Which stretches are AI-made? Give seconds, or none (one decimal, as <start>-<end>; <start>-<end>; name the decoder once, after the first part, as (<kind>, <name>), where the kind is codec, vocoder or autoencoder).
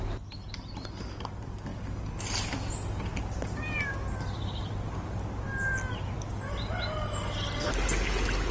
none